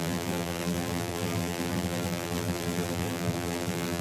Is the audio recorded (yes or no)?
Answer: no